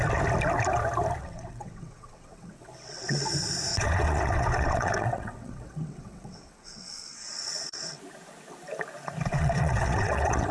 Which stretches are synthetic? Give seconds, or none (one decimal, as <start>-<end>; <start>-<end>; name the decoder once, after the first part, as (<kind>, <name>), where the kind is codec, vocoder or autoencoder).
1.2-3.3 (vocoder, WaveNeXt); 3.7-8.0; 9.3-10.5